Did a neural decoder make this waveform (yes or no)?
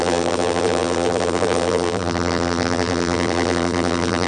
yes